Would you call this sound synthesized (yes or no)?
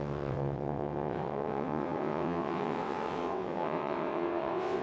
yes